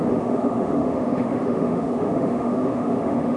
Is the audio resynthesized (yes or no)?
yes